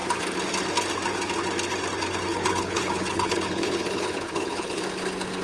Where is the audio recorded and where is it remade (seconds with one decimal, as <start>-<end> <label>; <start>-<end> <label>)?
0.0-2.3 recorded; 2.3-4.8 remade; 4.8-5.4 recorded